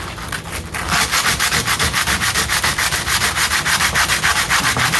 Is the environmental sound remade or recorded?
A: recorded